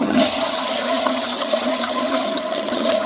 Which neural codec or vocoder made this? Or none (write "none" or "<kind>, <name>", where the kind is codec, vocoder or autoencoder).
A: vocoder, HiFi-GAN